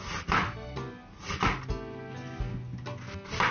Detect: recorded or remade recorded